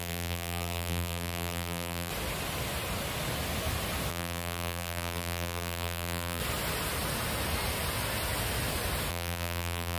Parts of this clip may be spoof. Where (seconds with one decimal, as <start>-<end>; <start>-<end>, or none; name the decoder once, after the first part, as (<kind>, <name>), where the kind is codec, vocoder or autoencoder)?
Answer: 0.0-2.1 (vocoder, BigVGAN v2); 4.1-6.4; 9.1-10.0